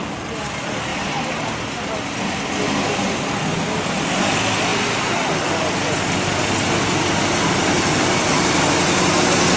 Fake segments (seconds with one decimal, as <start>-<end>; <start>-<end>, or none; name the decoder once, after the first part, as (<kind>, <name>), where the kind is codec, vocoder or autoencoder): none